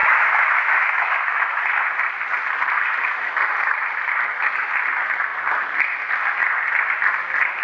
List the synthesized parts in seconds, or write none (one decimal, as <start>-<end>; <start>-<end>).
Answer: 0.0-1.6